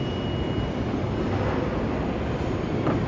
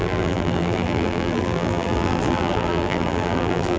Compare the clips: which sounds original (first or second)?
first